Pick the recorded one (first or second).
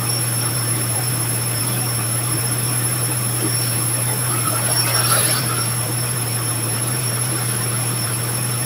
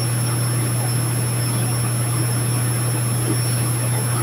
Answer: second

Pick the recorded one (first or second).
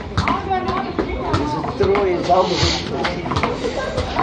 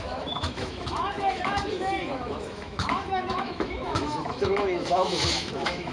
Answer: first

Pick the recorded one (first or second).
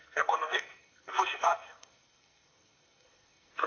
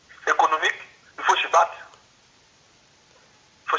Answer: second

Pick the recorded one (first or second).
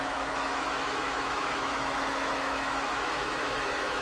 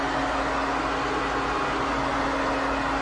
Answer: second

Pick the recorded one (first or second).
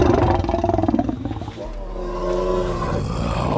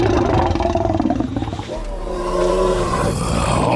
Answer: first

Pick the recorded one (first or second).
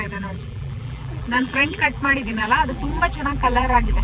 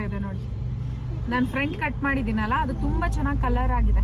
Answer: second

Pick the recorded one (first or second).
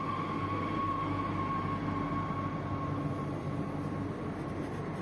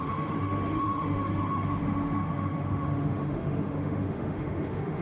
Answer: first